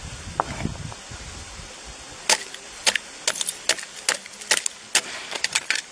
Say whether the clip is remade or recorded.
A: recorded